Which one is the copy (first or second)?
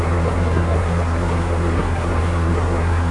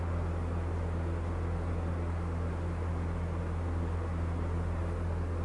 first